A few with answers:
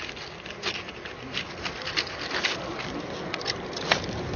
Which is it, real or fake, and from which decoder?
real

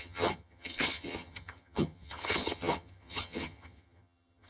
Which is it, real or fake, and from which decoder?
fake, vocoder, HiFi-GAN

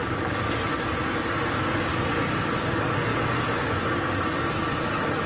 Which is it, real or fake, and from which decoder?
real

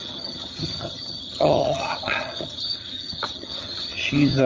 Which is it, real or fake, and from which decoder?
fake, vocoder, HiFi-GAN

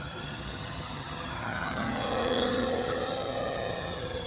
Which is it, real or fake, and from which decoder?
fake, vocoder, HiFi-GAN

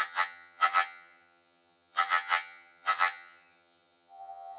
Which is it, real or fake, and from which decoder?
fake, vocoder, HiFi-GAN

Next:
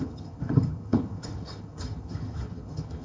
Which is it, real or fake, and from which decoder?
fake, vocoder, HiFi-GAN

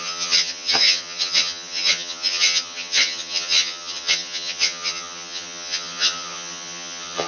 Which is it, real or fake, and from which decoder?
fake, vocoder, HiFi-GAN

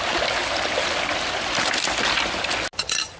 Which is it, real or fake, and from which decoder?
real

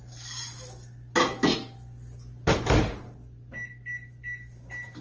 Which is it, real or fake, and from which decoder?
real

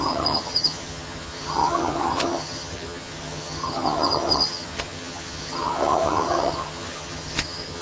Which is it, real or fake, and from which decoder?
fake, vocoder, HiFi-GAN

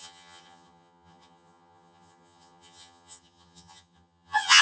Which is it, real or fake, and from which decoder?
fake, vocoder, HiFi-GAN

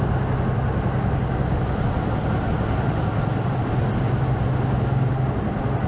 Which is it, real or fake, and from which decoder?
real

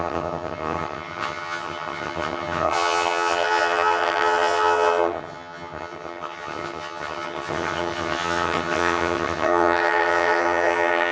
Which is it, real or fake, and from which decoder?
fake, vocoder, HiFi-GAN